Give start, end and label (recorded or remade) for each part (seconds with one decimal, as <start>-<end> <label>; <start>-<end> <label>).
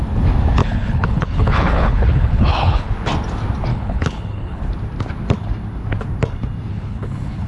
0.0-0.6 recorded; 0.6-2.9 remade; 2.9-3.7 recorded; 3.7-4.6 remade; 4.6-6.7 recorded; 6.7-7.5 remade